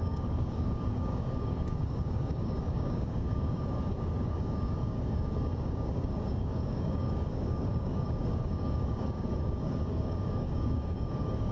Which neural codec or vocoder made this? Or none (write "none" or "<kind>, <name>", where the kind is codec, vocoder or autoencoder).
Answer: codec, DAC